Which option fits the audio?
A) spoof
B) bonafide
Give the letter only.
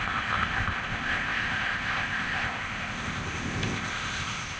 A